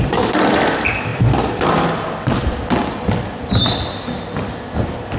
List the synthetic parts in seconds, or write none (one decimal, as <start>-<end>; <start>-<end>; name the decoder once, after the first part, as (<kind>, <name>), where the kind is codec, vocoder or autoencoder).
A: none